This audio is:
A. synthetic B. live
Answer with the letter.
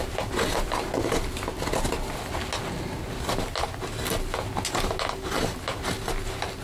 B